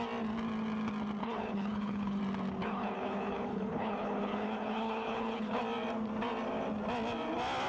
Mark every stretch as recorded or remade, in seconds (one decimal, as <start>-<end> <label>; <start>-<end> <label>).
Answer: 0.0-1.2 recorded; 1.2-2.2 remade; 2.2-2.6 recorded; 2.6-5.6 remade; 5.6-7.7 recorded

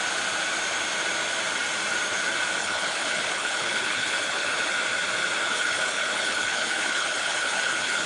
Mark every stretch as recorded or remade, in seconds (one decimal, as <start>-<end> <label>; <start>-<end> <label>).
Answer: 0.0-2.6 recorded; 2.6-4.7 remade; 4.7-5.4 recorded; 5.4-8.1 remade

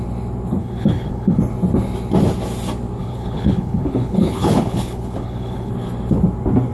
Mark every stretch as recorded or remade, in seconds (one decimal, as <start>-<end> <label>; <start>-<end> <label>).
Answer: 0.0-0.6 recorded; 0.6-1.4 remade; 1.4-3.0 recorded; 3.0-5.7 remade; 5.7-6.7 recorded

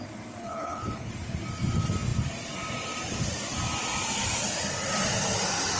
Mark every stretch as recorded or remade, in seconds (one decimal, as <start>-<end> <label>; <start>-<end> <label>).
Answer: 0.0-0.4 recorded; 0.4-1.1 remade; 1.1-5.8 recorded

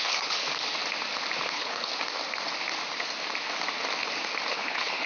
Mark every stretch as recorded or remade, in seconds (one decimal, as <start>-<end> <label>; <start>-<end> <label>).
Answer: 0.0-0.4 remade; 0.4-1.5 recorded; 1.5-1.9 remade; 1.9-4.5 recorded; 4.5-5.1 remade